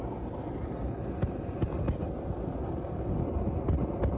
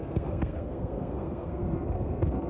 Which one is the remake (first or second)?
second